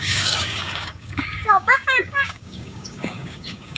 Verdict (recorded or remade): remade